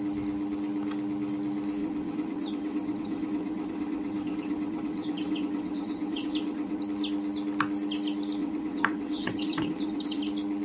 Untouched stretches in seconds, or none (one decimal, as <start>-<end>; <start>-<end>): 0.0-1.8; 6.8-8.4; 10.2-10.6